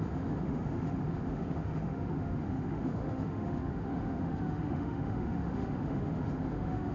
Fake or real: fake